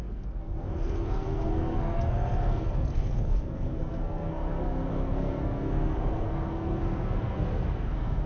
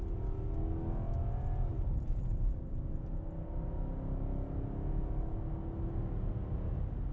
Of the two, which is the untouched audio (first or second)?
second